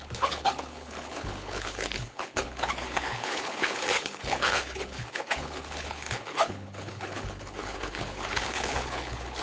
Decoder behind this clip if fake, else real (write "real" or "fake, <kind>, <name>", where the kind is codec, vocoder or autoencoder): fake, codec, HILCodec